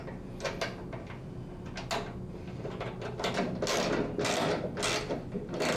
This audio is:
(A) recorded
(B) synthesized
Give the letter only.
A